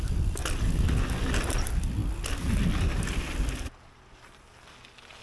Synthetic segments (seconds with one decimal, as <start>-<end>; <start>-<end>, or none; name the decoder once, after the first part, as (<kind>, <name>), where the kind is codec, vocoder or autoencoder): none